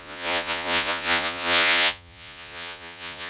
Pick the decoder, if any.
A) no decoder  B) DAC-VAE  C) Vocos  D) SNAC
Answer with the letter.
C